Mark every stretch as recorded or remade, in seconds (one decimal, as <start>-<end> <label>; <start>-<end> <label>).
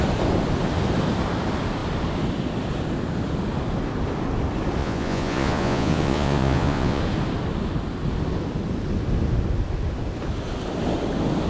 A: 0.0-4.8 recorded; 4.8-7.0 remade; 7.0-11.5 recorded